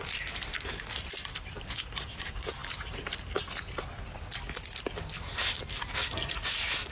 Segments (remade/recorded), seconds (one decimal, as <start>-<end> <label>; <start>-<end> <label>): 0.0-6.9 recorded